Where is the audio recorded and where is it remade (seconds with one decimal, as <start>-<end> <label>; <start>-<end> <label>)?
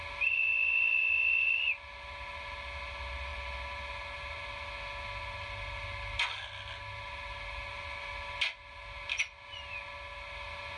0.0-10.8 recorded